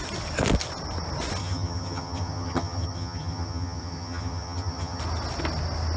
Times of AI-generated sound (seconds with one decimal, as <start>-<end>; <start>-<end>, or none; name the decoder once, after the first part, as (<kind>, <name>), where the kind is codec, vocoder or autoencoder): 1.4-5.0 (vocoder, HiFi-GAN)